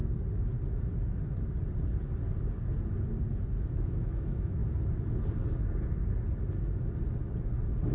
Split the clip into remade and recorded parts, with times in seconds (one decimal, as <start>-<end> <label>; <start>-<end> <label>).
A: 0.0-3.7 recorded; 3.7-4.6 remade; 4.6-7.9 recorded